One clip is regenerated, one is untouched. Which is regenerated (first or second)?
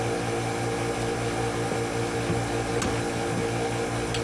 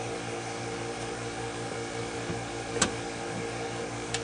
second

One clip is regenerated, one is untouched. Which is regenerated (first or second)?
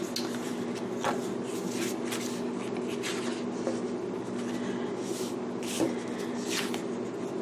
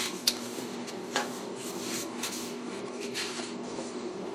second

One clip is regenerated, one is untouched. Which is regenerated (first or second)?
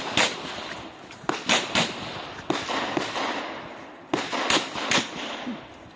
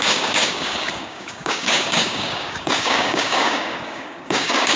second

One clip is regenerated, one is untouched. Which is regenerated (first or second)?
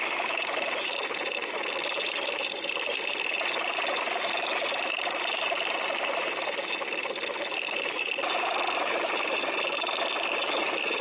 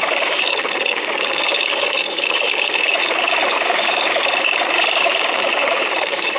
second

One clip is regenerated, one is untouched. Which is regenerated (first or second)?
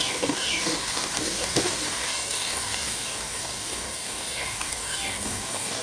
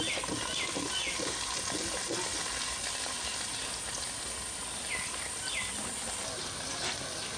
first